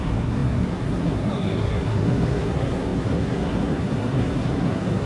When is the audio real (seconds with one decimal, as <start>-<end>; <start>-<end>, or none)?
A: none